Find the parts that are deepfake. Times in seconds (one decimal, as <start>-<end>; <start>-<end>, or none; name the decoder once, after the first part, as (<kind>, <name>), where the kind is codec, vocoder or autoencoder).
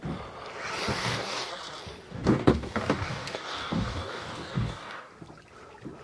0.9-1.5 (codec, DAC); 2.1-5.1